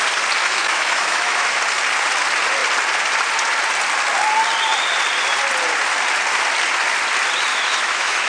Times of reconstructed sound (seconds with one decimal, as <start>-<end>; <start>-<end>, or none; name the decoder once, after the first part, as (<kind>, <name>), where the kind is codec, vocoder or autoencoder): 0.4-1.6 (autoencoder, DAC-VAE); 7.5-8.3